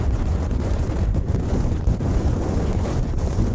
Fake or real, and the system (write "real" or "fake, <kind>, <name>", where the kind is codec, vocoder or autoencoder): fake, vocoder, Vocos